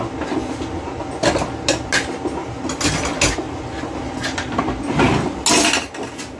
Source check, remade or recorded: recorded